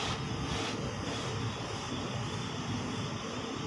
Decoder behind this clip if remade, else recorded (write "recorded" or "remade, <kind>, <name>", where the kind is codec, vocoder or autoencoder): recorded